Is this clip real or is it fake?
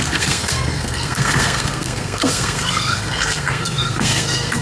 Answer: fake